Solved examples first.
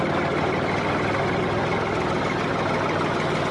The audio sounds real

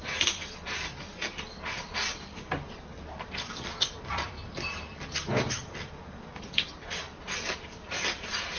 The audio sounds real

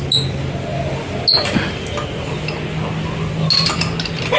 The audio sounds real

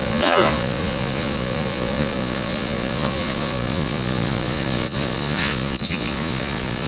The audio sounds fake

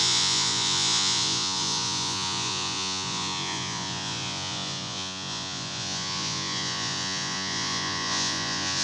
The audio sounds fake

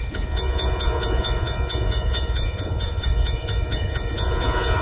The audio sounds fake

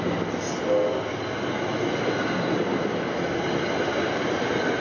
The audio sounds real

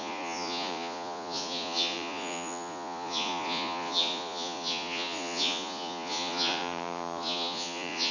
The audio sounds fake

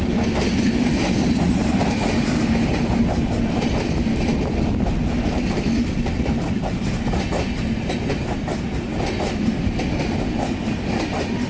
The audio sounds real